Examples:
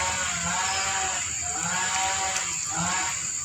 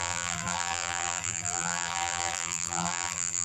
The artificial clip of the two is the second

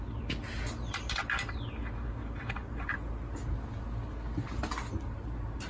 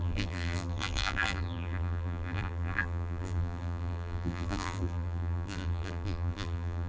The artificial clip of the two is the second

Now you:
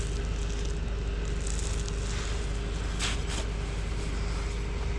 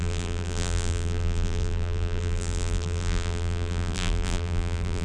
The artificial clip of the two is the second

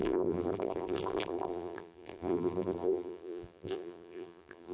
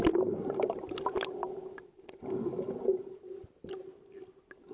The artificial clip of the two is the first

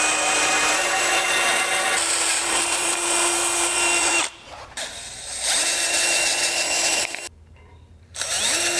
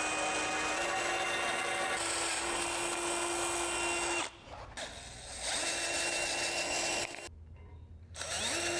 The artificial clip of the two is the first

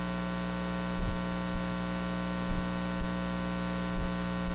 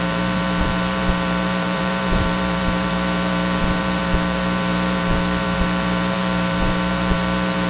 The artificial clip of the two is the second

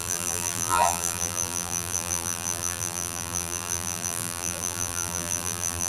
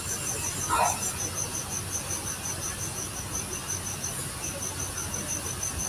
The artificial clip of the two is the first